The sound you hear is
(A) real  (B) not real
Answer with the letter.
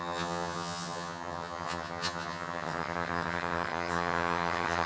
B